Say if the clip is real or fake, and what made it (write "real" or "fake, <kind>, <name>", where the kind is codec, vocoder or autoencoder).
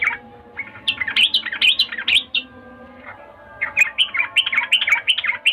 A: real